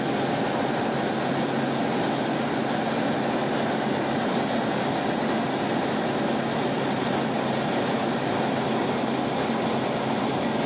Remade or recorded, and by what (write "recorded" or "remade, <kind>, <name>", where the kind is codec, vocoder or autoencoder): recorded